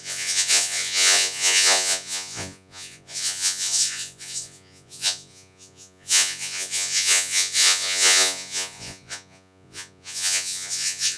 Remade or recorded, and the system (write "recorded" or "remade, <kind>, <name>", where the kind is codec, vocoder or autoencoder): remade, vocoder, Vocos